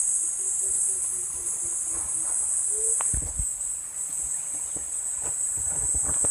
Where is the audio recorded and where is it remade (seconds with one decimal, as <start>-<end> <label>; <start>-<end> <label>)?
0.0-6.3 recorded